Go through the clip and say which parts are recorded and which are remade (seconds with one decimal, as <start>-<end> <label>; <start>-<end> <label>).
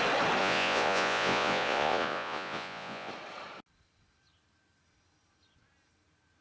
0.0-0.4 recorded; 0.4-3.1 remade; 3.1-6.4 recorded